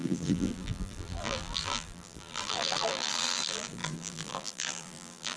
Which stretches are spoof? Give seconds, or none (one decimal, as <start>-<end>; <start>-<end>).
0.0-5.4